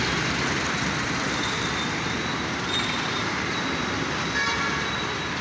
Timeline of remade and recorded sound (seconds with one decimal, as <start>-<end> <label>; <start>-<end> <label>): 0.0-1.4 remade; 1.4-3.1 recorded; 3.1-5.4 remade

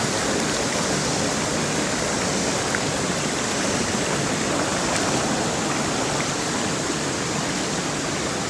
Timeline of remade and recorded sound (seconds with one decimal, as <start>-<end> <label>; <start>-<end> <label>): 0.0-8.5 recorded

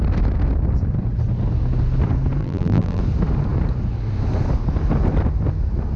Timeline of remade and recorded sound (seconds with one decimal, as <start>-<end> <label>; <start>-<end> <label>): 0.0-2.4 recorded; 2.4-3.0 remade; 3.0-6.0 recorded

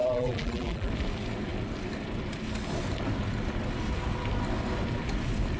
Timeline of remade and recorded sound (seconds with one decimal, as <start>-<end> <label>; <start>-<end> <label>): 0.0-0.9 remade; 0.9-5.6 recorded

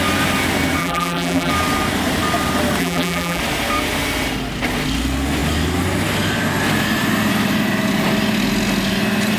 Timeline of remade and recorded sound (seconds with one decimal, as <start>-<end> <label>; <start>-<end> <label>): 0.0-0.8 recorded; 0.8-1.5 remade; 1.5-2.8 recorded; 2.8-3.4 remade; 3.4-9.4 recorded

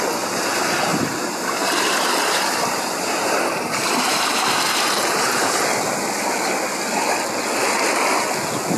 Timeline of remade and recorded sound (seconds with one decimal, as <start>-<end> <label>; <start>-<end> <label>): 0.0-0.9 recorded; 0.9-5.6 remade; 5.6-8.8 recorded

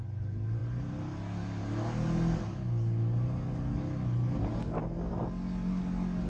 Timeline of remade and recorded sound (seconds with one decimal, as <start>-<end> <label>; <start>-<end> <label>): 0.0-6.3 recorded